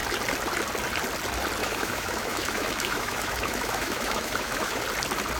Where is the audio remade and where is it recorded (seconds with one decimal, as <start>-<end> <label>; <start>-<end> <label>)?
0.0-1.6 recorded; 1.6-4.8 remade; 4.8-5.4 recorded